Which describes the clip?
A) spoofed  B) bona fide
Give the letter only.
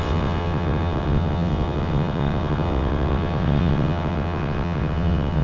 A